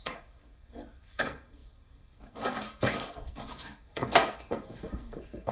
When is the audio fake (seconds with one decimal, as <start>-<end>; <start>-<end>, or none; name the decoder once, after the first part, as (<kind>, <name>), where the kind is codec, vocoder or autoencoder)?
0.0-5.5 (codec, SNAC)